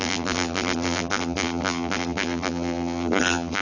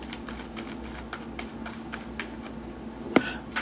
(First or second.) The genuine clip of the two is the second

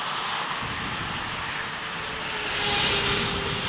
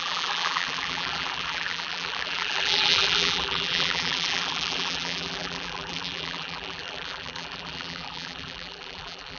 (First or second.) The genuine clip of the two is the first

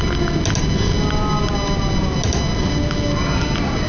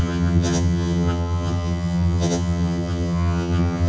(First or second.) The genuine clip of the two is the first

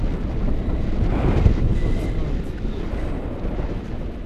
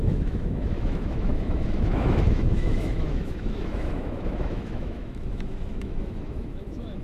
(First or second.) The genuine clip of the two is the first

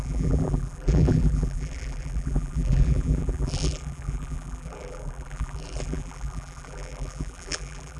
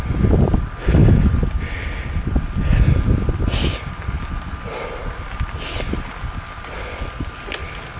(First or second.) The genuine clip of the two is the second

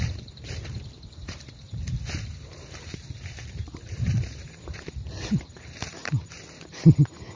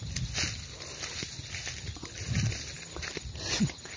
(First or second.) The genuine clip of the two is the second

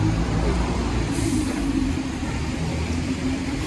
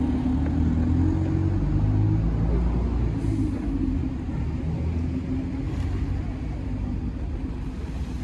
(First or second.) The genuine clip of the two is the second